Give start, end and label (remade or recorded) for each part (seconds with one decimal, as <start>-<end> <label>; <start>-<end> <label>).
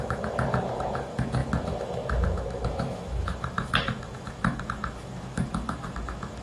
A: 0.0-6.4 remade